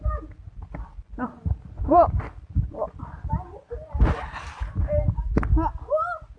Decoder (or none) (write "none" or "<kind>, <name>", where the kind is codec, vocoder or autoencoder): none